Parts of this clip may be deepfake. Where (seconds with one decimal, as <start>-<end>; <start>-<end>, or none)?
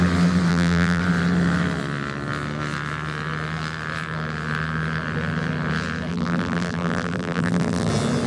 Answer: 0.5-1.0; 6.1-7.9